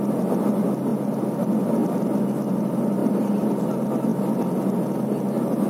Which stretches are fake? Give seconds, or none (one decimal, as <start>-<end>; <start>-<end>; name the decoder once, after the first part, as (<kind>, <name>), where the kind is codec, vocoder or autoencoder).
0.9-1.4 (vocoder, BigVGAN v2); 3.0-3.6